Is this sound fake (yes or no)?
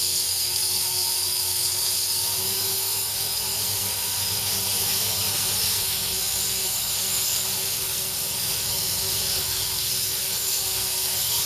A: yes